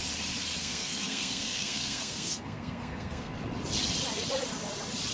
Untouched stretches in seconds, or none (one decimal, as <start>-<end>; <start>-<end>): 0.0-0.6; 3.3-5.1